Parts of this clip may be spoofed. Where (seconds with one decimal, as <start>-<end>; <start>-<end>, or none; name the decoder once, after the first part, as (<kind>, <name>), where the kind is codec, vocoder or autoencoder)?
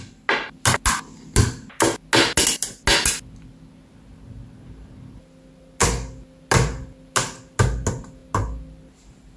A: none